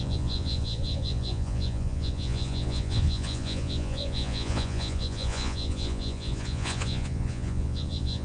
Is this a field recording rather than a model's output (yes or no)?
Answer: no